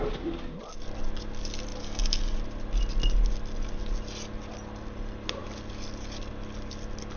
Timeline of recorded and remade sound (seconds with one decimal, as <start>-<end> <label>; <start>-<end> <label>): 0.0-7.2 recorded